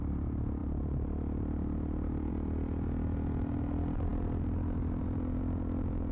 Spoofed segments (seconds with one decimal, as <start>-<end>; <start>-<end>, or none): none

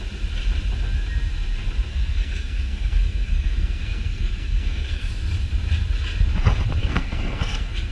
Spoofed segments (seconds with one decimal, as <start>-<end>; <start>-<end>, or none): 1.9-5.1; 6.8-7.9

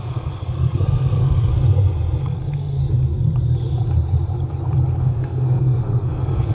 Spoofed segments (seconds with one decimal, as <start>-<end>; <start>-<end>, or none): 0.0-1.5; 2.2-2.8; 5.0-6.5

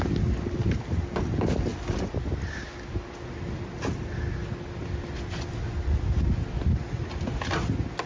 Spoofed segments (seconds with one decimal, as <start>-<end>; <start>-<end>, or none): none

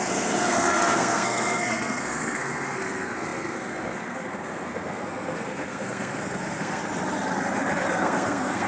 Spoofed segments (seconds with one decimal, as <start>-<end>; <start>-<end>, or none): 0.0-6.8; 7.9-8.7

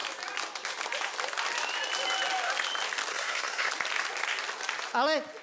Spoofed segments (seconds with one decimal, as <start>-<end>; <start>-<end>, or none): 3.1-3.7

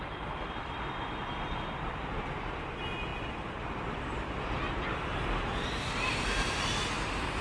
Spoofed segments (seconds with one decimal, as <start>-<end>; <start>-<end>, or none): none